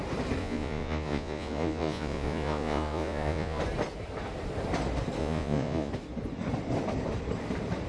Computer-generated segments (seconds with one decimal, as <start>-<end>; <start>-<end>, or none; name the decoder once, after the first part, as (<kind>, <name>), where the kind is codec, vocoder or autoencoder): 0.4-3.6 (vocoder, Vocos); 5.2-5.9